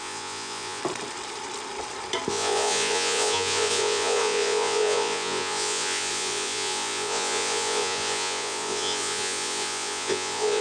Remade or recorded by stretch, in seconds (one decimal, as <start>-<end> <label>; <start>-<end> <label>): 0.0-0.8 remade; 0.8-2.3 recorded; 2.3-10.6 remade